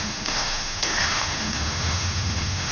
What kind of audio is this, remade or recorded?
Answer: remade